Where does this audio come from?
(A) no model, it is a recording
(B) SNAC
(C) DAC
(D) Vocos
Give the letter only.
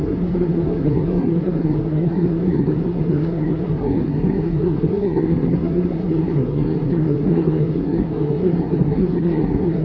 B